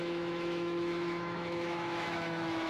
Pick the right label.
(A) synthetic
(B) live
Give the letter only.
A